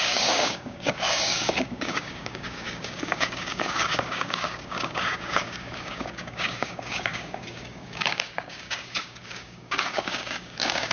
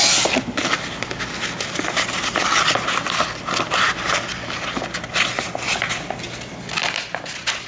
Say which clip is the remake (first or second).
first